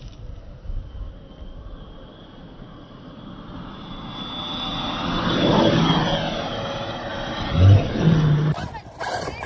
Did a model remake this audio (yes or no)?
no